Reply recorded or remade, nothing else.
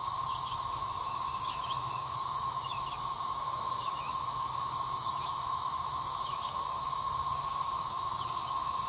remade